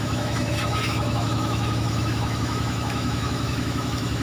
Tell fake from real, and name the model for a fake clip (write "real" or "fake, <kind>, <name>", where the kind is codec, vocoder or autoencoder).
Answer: fake, autoencoder, DAC-VAE